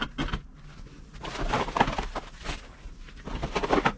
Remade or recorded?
recorded